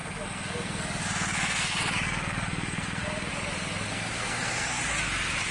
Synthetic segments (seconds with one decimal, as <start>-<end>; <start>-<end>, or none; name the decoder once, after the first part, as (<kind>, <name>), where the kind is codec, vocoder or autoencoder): 0.0-3.3 (codec, SNAC); 3.9-4.8